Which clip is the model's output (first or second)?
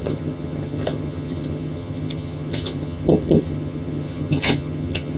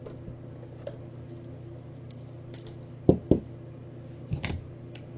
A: first